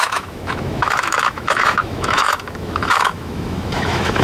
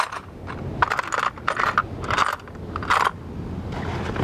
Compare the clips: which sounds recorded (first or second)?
second